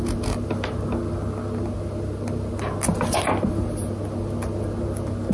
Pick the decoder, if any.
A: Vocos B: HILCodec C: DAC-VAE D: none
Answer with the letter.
D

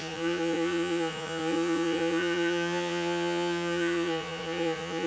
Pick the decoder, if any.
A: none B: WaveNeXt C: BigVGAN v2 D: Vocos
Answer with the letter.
D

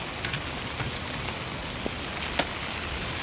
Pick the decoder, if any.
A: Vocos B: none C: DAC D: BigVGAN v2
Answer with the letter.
B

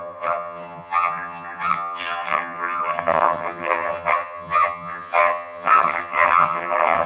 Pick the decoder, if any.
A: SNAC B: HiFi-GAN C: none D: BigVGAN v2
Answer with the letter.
B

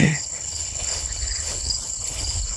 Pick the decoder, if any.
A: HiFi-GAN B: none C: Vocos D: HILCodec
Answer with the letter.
D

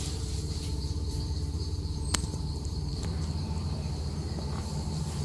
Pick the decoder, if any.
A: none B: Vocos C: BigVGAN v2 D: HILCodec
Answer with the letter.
C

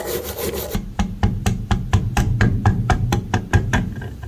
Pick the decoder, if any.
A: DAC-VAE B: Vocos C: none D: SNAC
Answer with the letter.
C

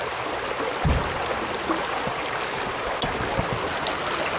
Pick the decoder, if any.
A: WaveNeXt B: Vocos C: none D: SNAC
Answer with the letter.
C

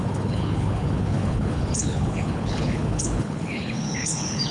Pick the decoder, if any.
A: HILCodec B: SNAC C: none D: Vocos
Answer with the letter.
A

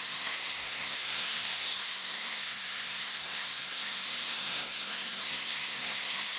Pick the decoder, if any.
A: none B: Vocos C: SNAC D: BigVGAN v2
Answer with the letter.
C